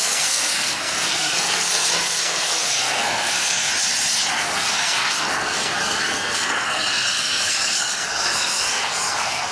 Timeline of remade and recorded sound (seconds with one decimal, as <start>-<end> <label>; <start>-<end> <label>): 0.0-3.7 remade; 3.7-4.3 recorded; 4.3-9.5 remade